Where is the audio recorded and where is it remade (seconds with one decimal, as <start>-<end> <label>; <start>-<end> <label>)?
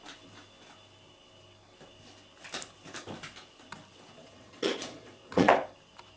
0.0-4.2 recorded; 4.2-5.5 remade; 5.5-6.2 recorded